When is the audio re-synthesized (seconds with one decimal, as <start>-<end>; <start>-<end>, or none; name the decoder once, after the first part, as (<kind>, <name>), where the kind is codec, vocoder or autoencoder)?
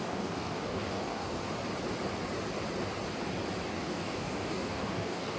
0.0-1.4 (codec, DAC); 3.7-5.4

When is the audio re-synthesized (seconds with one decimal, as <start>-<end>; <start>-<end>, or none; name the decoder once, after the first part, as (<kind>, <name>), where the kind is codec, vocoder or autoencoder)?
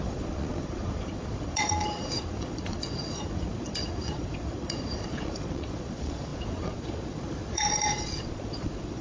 0.0-9.0 (vocoder, Vocos)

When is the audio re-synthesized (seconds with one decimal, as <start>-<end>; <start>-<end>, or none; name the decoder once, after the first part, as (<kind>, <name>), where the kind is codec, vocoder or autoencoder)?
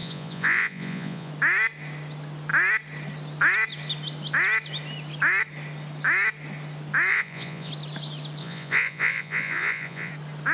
0.0-1.3 (vocoder, Vocos); 7.1-7.7; 8.4-10.1